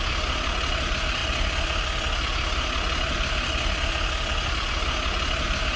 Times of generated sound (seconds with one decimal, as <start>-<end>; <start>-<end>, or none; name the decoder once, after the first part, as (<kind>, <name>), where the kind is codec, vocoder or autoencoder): none